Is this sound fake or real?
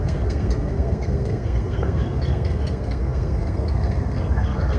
fake